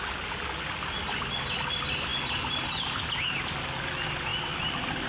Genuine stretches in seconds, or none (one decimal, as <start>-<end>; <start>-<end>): 0.0-5.1